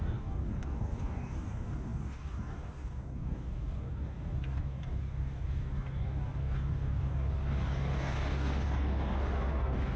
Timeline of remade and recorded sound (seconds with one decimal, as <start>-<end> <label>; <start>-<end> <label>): 0.0-10.0 remade